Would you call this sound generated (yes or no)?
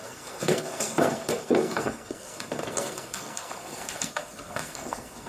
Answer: yes